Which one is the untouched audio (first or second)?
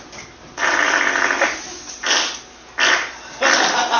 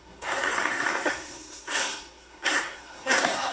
first